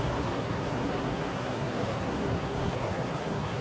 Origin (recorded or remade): remade